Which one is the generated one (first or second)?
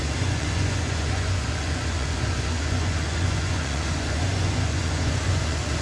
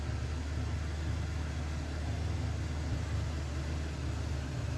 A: first